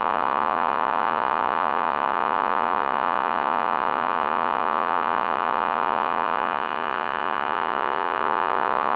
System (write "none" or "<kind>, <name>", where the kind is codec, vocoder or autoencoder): vocoder, Vocos